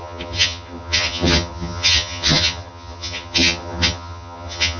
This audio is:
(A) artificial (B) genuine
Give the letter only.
A